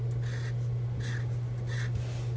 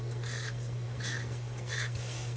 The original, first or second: first